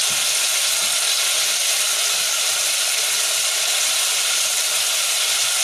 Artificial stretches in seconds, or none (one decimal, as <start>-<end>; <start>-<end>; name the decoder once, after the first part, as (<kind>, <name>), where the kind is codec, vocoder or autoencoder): none